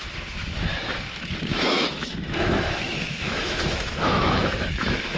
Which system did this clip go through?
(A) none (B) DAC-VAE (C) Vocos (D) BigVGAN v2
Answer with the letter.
B